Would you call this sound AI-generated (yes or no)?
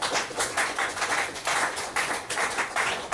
yes